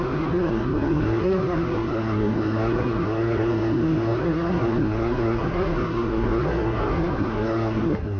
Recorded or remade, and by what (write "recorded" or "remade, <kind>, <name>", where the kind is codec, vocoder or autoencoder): remade, codec, SNAC